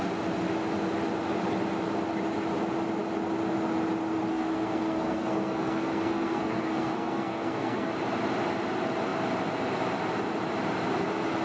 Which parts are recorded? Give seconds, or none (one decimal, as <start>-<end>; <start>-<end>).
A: 0.0-4.3; 7.9-11.4